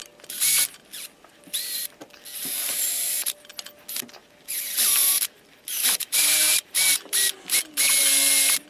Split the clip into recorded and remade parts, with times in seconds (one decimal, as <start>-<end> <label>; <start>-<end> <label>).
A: 0.0-2.4 recorded; 2.4-3.5 remade; 3.5-4.2 recorded; 4.2-7.0 remade; 7.0-8.7 recorded